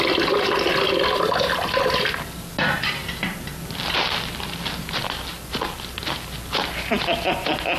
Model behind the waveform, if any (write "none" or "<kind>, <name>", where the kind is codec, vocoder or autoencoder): none